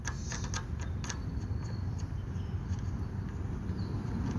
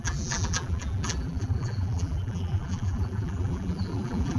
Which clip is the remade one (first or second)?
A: second